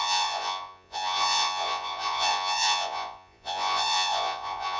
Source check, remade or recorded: remade